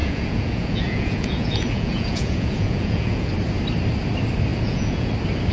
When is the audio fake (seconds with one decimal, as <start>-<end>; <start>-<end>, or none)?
0.0-3.3; 4.5-5.1